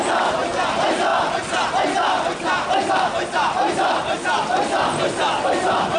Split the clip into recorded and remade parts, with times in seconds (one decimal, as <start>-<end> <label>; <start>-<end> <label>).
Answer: 0.0-6.0 recorded